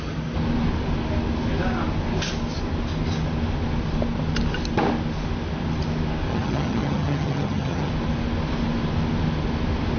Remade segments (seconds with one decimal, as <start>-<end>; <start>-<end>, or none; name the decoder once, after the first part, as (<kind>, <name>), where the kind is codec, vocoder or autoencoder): 6.3-7.9 (vocoder, HiFi-GAN)